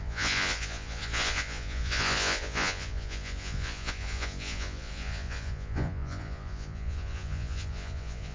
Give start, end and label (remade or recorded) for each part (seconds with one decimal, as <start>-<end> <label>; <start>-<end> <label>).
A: 0.0-8.3 remade